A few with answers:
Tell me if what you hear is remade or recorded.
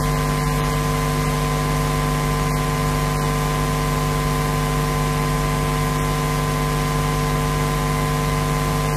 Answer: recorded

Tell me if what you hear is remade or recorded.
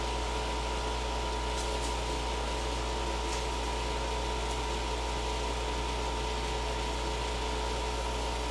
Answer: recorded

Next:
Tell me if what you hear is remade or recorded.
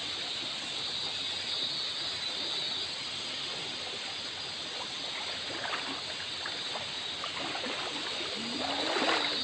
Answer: recorded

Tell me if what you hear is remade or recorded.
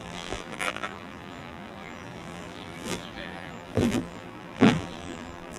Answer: remade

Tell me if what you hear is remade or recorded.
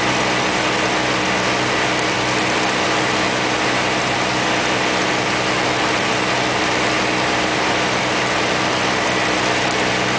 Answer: recorded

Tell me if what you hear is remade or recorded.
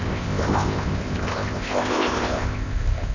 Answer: remade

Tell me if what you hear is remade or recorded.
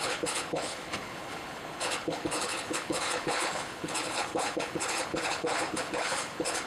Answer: remade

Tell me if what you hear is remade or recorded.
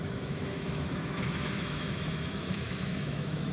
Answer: remade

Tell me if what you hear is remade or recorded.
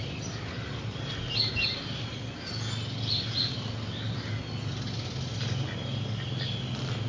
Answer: recorded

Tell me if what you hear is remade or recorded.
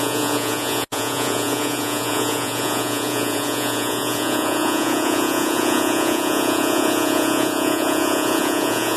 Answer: remade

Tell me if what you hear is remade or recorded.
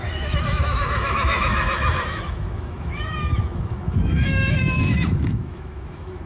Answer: remade